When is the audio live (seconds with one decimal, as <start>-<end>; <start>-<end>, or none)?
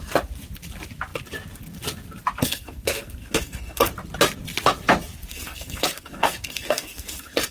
0.0-2.4; 3.9-5.3